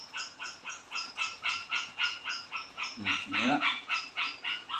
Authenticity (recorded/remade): remade